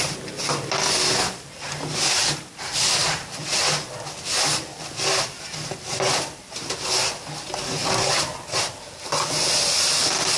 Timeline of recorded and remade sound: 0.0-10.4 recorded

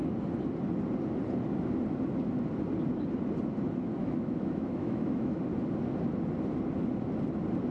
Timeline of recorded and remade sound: 0.0-4.0 recorded; 4.0-5.4 remade; 5.4-7.7 recorded

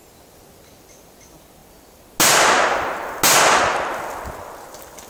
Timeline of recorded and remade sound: 0.0-5.1 recorded

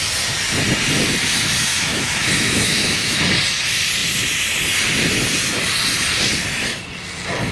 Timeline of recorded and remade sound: 0.0-1.7 recorded; 1.7-3.2 remade; 3.2-7.5 recorded

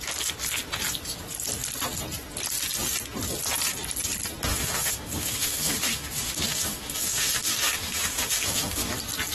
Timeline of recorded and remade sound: 0.0-4.5 recorded; 4.5-8.9 remade; 8.9-9.3 recorded

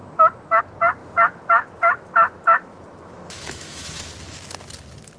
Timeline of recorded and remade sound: 0.0-0.6 remade; 0.6-1.0 recorded; 1.0-4.1 remade; 4.1-5.2 recorded

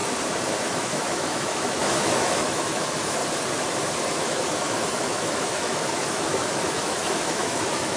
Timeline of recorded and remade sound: 0.0-0.6 recorded; 0.6-3.2 remade; 3.2-3.8 recorded; 3.8-8.0 remade

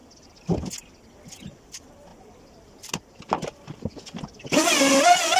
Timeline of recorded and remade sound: 0.0-5.4 recorded